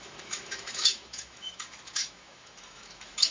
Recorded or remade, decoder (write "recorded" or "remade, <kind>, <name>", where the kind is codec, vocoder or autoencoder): remade, autoencoder, DAC-VAE